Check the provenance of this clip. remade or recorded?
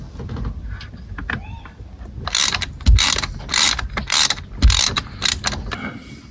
recorded